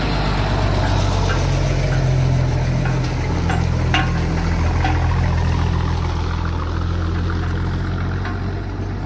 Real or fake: real